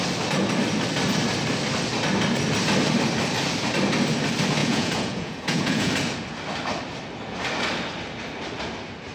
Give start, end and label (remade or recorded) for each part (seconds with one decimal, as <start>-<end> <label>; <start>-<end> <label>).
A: 0.0-4.6 recorded; 4.6-5.9 remade; 5.9-9.1 recorded

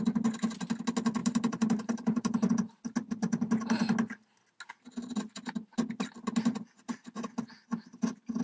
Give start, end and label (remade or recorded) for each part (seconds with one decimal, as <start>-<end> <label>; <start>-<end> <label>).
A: 0.0-1.2 recorded; 1.2-2.5 remade; 2.5-8.4 recorded

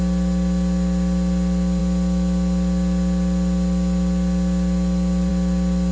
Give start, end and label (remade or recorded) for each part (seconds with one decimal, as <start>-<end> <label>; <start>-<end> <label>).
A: 0.0-5.9 recorded